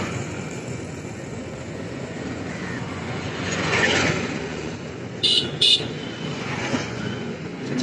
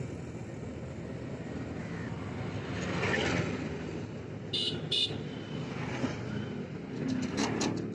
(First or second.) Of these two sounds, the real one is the second